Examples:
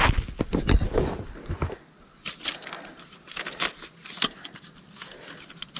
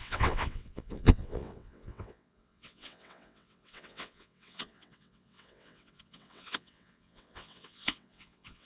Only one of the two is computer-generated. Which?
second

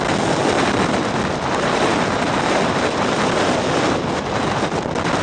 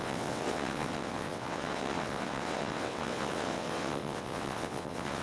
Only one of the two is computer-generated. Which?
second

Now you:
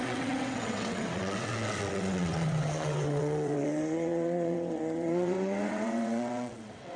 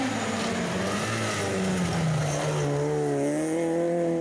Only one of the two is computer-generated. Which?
first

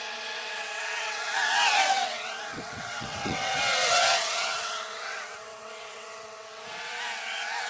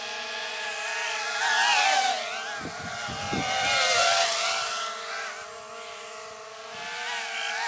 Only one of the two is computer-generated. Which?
first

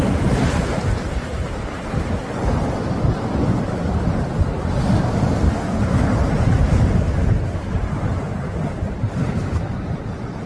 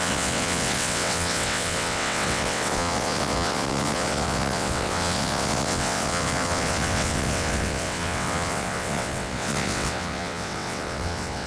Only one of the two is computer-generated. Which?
second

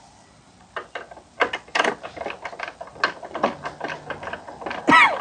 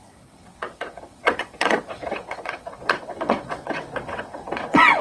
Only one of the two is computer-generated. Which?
second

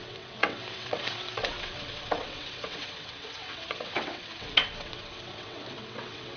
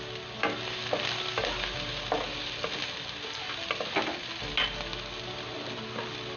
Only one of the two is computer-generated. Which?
first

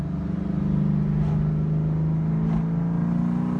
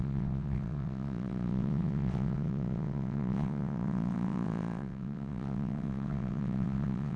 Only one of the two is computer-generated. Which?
second